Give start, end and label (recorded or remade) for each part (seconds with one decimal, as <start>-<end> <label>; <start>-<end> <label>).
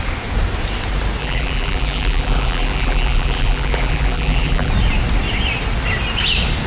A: 0.0-1.2 recorded; 1.2-4.7 remade; 4.7-6.7 recorded